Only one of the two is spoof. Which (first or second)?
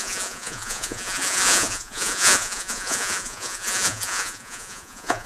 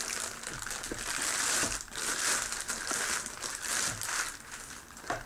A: first